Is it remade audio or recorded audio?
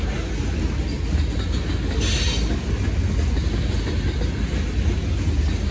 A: recorded